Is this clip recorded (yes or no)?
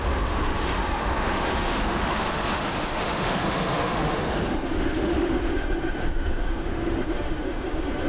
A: no